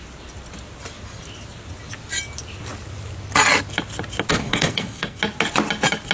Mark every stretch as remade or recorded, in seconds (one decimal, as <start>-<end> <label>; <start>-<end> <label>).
0.0-4.3 recorded; 4.3-5.2 remade; 5.2-6.1 recorded